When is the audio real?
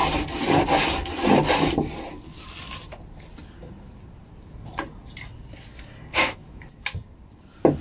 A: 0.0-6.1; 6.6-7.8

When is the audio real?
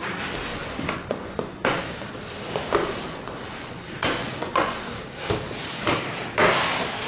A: 0.0-0.5; 1.8-2.8; 4.9-7.1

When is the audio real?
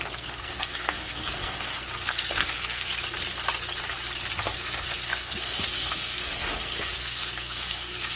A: 2.9-4.3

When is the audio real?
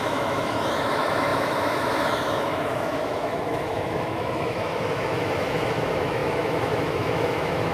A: none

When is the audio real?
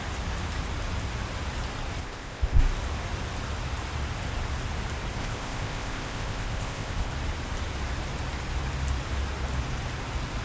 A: 0.0-2.0; 2.6-5.2; 7.1-10.4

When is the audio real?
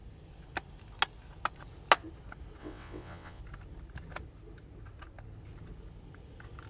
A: 0.0-2.6; 3.4-6.7